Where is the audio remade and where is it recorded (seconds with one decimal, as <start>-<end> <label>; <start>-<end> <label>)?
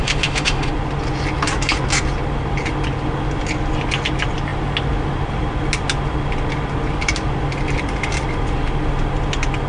0.0-0.7 remade; 0.7-9.7 recorded